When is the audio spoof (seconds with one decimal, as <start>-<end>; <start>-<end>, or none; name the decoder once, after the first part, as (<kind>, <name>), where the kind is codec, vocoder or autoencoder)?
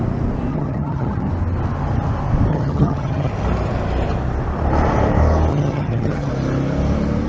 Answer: 0.5-1.3 (vocoder, HiFi-GAN); 2.5-3.3; 5.5-6.3